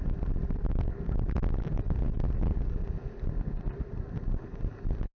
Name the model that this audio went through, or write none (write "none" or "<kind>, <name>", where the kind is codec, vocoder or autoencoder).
none